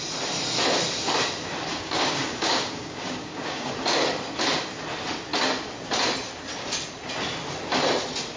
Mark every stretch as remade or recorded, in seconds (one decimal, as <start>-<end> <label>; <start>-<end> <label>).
0.0-1.7 recorded; 1.7-3.7 remade; 3.7-8.4 recorded